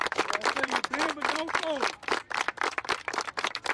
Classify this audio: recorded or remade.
remade